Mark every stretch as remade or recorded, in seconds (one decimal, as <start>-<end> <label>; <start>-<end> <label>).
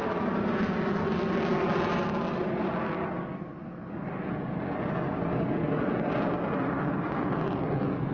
0.0-8.1 recorded